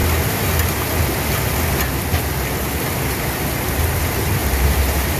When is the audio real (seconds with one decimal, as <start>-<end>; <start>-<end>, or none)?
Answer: 0.0-2.1; 3.1-5.2

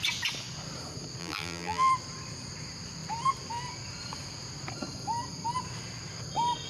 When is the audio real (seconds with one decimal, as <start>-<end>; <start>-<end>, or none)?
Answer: 0.0-1.2; 1.9-6.7